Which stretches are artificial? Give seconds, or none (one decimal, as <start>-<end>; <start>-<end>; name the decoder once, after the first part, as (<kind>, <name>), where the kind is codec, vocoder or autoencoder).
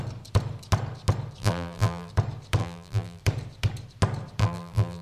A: 1.4-2.1 (vocoder, BigVGAN v2); 2.6-3.2; 4.4-5.0